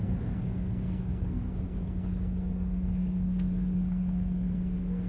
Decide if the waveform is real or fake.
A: fake